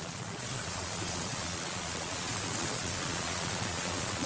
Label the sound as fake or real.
fake